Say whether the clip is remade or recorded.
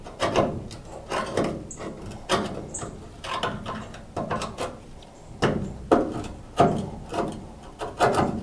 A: recorded